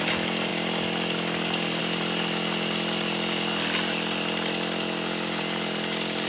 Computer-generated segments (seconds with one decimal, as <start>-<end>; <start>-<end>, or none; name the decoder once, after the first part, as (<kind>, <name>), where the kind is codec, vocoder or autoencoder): none